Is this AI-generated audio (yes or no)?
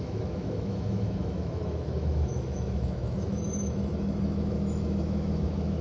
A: yes